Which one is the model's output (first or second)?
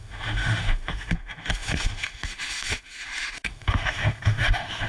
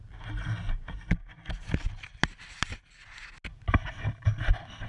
first